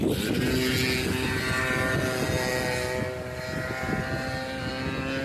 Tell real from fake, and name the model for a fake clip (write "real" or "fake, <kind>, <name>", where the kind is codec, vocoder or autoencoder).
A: real